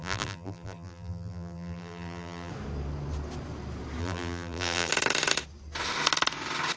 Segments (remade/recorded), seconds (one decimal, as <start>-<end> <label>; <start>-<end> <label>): 0.0-2.5 remade; 2.5-4.0 recorded; 4.0-4.9 remade; 4.9-6.8 recorded